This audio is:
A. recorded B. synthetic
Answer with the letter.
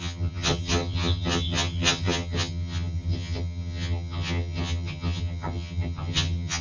B